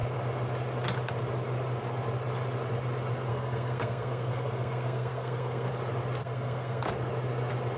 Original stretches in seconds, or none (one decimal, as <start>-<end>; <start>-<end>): 0.0-3.3; 5.7-6.2; 6.9-7.8

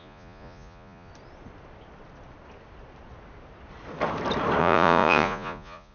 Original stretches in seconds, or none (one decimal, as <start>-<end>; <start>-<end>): 1.1-4.6

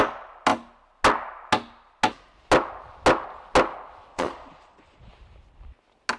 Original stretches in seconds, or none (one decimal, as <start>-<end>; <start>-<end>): 0.0-4.1; 5.1-6.2

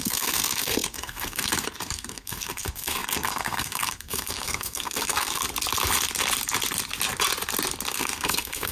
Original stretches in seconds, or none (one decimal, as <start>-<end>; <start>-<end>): 5.4-7.9

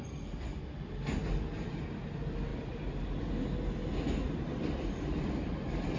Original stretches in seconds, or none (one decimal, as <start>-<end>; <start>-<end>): 0.0-6.0

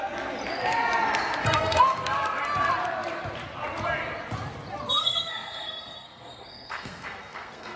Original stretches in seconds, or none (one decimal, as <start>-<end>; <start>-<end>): 0.0-1.4; 2.0-5.0

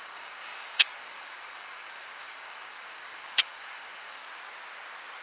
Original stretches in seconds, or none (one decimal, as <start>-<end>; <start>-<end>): 4.2-5.2